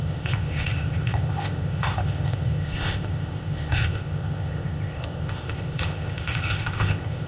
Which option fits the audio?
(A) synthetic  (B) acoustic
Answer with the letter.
A